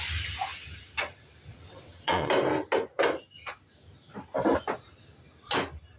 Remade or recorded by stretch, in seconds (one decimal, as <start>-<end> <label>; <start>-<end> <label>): 0.0-1.5 recorded; 1.5-2.3 remade; 2.3-6.0 recorded

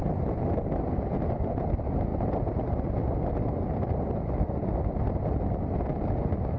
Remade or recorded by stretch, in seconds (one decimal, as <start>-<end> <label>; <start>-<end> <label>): 0.0-6.6 recorded

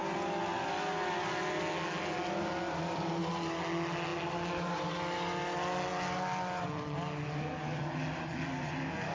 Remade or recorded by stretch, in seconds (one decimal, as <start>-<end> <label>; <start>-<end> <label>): 0.0-9.1 recorded